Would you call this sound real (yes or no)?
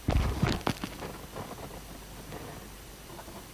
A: no